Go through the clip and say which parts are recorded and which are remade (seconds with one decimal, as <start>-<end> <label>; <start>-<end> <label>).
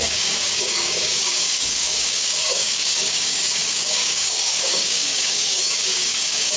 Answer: 0.0-6.6 remade